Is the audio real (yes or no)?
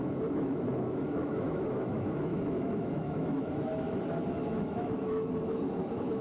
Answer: no